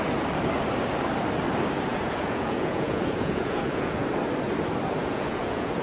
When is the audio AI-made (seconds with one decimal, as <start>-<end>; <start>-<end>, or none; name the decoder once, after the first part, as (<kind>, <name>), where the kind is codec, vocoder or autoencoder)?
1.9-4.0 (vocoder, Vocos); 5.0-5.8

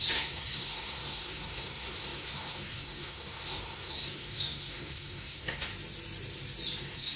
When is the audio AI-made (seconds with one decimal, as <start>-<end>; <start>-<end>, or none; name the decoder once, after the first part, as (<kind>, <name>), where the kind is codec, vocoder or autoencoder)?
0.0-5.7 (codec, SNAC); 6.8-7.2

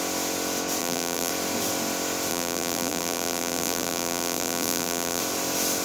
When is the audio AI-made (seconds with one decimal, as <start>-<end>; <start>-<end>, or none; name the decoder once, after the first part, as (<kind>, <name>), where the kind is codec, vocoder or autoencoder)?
0.8-1.3 (vocoder, BigVGAN v2); 2.3-5.2

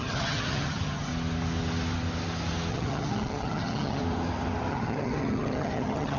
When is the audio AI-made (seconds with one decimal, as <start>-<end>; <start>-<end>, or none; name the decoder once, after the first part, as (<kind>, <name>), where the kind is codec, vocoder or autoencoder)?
0.0-1.1 (vocoder, HiFi-GAN); 2.7-4.0; 4.7-6.2